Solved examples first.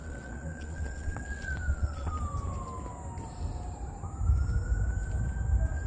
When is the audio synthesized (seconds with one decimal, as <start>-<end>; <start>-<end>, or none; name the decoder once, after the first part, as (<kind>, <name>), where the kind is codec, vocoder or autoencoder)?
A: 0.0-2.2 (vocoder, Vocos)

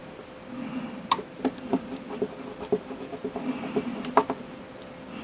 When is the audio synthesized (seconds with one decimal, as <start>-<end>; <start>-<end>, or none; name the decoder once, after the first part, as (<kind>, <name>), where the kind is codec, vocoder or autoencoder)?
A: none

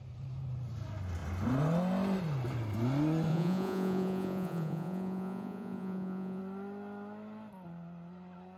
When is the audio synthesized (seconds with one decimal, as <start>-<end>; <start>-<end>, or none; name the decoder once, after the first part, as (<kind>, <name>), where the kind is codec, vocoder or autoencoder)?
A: 3.3-6.4 (vocoder, Vocos)

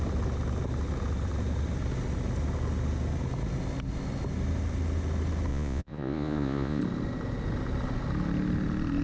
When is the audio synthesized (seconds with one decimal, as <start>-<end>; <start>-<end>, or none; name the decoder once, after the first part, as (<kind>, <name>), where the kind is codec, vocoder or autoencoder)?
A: 5.5-6.8 (vocoder, Vocos)

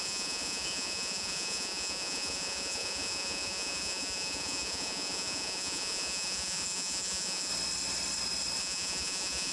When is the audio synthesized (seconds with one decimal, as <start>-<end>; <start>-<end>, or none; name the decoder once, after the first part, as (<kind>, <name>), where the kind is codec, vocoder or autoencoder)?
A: 0.0-7.5 (vocoder, Vocos); 8.6-9.5

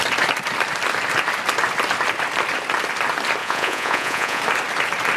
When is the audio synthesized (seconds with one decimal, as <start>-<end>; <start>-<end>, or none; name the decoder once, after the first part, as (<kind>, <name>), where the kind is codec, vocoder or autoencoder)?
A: 3.4-4.4 (vocoder, Vocos)